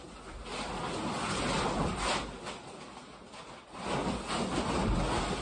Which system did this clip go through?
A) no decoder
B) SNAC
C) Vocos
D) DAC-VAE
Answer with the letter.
A